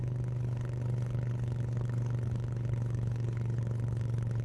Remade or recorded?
remade